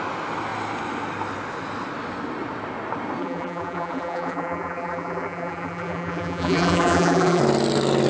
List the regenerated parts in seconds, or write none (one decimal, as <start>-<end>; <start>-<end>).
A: 3.2-7.4